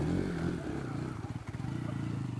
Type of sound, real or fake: real